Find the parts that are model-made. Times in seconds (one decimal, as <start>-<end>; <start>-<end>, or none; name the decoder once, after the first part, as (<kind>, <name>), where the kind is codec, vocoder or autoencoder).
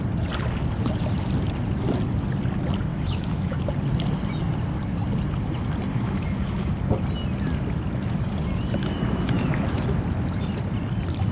2.9-3.7 (autoencoder, DAC-VAE); 5.9-6.7; 8.8-10.0